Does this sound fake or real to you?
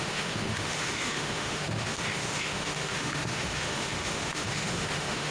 fake